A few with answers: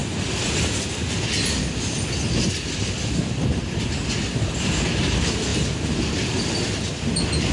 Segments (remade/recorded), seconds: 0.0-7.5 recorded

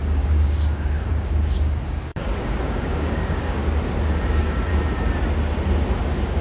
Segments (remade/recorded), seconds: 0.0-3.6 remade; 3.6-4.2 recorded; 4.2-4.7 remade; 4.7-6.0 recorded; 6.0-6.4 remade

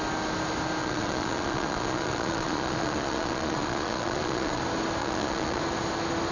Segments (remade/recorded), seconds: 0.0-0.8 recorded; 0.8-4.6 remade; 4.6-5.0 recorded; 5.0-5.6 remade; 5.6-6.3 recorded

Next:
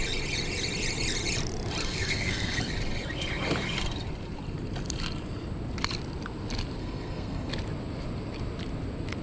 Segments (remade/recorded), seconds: 0.0-1.8 recorded; 1.8-2.6 remade; 2.6-6.8 recorded; 6.8-7.5 remade; 7.5-9.2 recorded